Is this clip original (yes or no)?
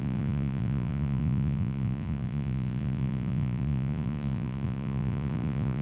no